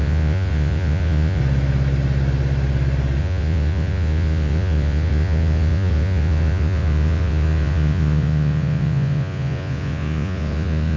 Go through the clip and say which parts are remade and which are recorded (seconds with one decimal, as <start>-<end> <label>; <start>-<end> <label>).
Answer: 0.0-1.4 remade; 1.4-3.2 recorded; 3.2-11.0 remade